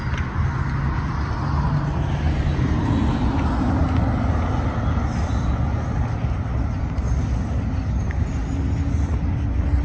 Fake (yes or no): no